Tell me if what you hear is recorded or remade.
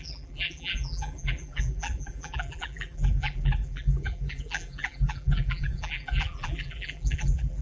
remade